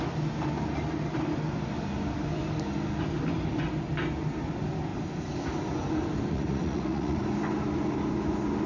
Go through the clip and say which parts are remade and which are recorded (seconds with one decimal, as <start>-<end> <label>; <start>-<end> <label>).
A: 0.0-6.3 recorded; 6.3-7.2 remade; 7.2-8.7 recorded